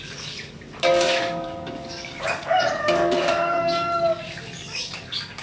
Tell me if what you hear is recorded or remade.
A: remade